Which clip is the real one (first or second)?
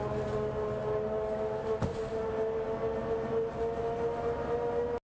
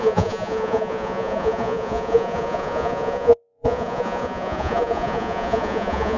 first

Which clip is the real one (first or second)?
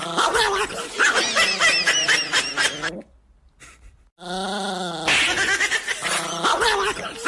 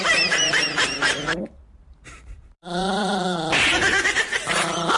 first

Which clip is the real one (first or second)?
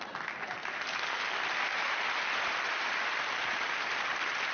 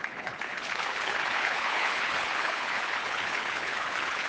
first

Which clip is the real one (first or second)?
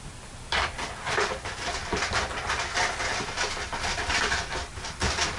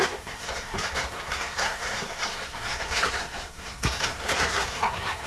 first